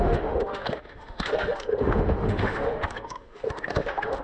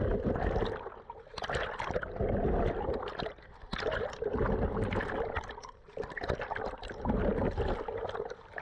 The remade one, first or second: first